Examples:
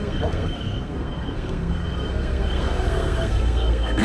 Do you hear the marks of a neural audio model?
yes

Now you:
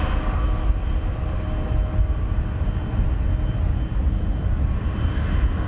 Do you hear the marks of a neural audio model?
no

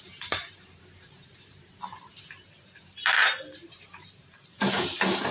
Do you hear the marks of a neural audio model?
yes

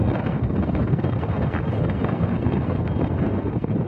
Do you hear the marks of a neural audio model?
yes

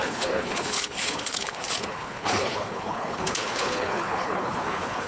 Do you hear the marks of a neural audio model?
yes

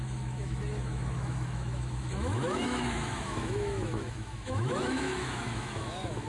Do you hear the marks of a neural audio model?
yes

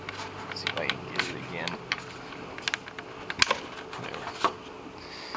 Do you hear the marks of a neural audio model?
no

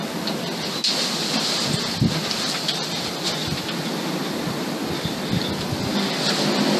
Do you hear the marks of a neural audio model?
no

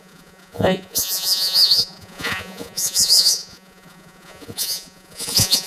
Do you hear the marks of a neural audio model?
yes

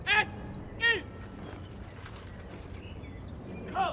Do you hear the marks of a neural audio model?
no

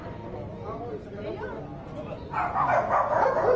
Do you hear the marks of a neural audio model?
no